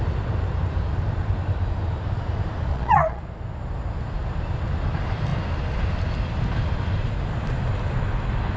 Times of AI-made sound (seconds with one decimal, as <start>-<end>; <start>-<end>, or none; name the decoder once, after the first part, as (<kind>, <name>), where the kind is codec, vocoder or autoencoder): 2.7-3.2 (vocoder, Vocos)